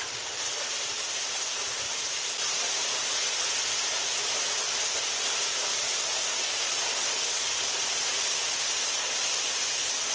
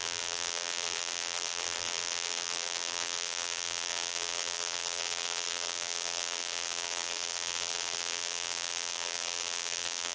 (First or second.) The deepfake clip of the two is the second